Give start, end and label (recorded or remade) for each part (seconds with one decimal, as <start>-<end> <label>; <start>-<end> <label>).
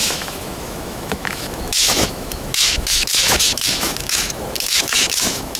0.0-5.6 remade